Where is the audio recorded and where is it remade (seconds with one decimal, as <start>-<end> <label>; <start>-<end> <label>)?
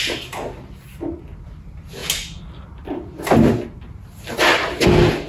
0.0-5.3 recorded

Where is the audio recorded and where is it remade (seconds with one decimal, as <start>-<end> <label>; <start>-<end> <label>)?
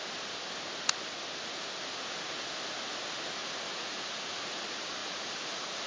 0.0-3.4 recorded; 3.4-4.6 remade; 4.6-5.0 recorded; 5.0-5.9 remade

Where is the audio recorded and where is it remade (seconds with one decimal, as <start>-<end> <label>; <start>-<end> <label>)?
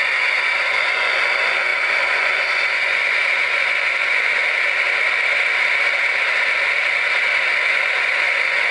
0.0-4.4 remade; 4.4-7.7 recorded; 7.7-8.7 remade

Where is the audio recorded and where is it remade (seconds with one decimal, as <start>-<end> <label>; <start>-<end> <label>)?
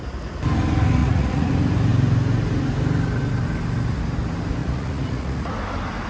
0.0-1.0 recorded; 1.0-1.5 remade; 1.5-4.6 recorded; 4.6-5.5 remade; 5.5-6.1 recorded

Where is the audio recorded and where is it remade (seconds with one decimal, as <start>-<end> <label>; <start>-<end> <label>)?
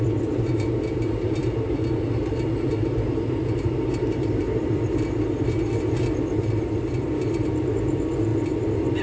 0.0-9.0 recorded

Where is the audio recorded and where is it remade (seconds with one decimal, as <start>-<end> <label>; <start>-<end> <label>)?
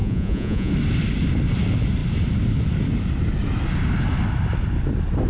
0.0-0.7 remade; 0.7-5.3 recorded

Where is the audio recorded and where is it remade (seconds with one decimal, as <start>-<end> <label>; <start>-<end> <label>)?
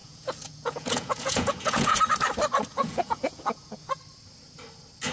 0.0-2.0 remade; 2.0-2.7 recorded; 2.7-4.0 remade; 4.0-5.1 recorded